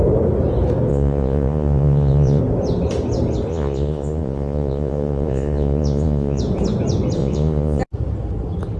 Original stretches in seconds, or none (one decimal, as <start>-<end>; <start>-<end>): 0.0-0.9; 2.4-3.5; 6.4-7.2; 7.8-8.8